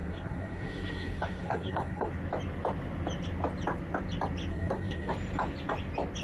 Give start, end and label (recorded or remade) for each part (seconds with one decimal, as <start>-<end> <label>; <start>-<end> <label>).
0.0-2.1 remade; 2.1-4.5 recorded; 4.5-5.1 remade; 5.1-6.2 recorded

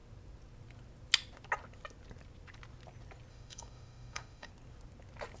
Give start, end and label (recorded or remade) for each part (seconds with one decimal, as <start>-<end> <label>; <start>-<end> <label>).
0.0-3.3 recorded; 3.3-4.5 remade; 4.5-5.4 recorded

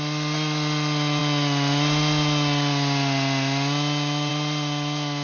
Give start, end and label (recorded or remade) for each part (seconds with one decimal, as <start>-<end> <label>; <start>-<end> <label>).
0.0-5.2 recorded

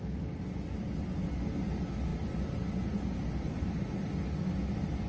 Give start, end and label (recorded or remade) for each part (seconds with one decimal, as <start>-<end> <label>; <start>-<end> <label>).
0.0-2.1 recorded; 2.1-4.1 remade; 4.1-5.1 recorded